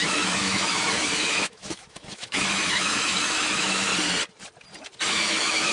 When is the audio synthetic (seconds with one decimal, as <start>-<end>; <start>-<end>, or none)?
0.0-3.9; 5.1-5.7